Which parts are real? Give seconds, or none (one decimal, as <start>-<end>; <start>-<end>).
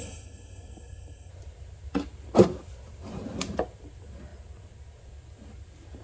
1.3-6.0